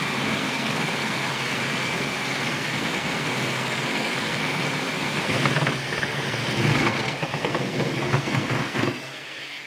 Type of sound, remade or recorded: remade